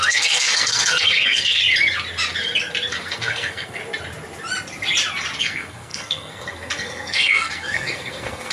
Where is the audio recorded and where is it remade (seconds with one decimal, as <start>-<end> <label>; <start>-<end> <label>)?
0.0-1.6 remade; 1.6-2.9 recorded; 2.9-3.8 remade; 3.8-5.4 recorded; 5.4-8.5 remade